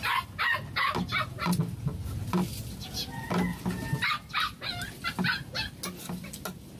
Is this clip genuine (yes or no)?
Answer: yes